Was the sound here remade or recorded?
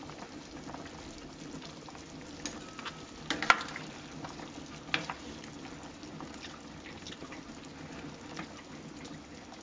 recorded